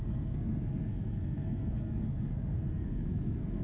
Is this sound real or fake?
fake